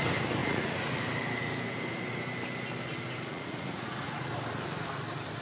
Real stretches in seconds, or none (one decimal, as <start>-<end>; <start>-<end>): 0.0-0.4; 1.0-3.3; 4.3-5.4